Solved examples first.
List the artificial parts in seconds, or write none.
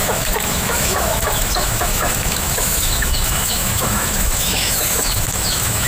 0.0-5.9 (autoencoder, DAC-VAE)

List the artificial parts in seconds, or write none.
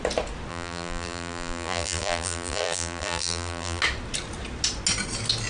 0.5-3.8 (vocoder, BigVGAN v2)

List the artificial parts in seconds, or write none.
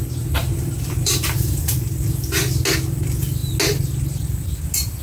0.4-1.7 (vocoder, BigVGAN v2)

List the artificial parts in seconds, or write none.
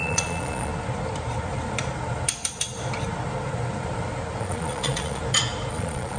0.0-0.7 (vocoder, Vocos); 4.4-5.2; 5.7-6.2